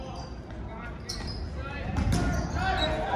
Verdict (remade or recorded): recorded